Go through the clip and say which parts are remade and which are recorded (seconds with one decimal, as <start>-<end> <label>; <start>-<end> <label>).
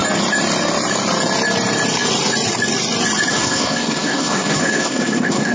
0.0-3.3 recorded; 3.3-5.5 remade